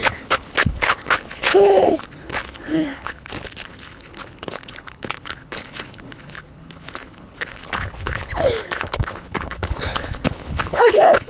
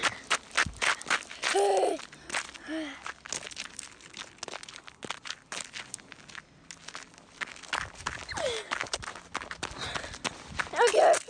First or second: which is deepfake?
first